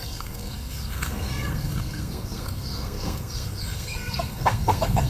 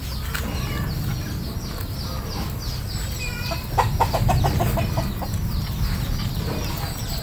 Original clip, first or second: second